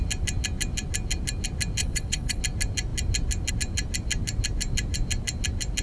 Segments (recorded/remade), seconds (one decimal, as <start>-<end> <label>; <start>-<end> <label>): 0.0-1.8 recorded; 1.8-2.4 remade; 2.4-5.8 recorded